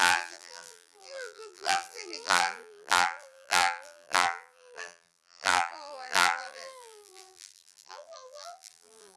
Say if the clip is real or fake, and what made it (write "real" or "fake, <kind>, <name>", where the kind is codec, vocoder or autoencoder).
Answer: fake, vocoder, BigVGAN v2